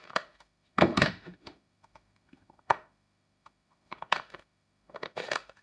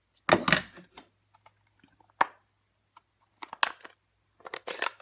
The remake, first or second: first